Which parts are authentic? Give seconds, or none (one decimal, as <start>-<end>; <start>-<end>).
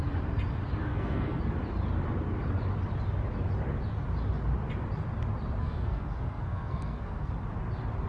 0.0-0.9; 1.4-5.6; 7.3-8.1